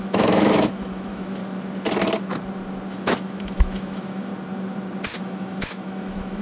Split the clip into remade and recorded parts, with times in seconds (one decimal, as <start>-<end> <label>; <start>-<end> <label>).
0.0-1.4 remade; 1.4-2.9 recorded; 2.9-4.3 remade; 4.3-5.2 recorded; 5.2-6.4 remade